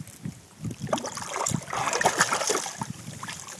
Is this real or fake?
real